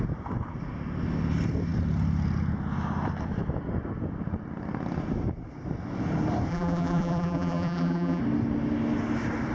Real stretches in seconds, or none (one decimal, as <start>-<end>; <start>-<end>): 0.0-6.5; 8.2-9.5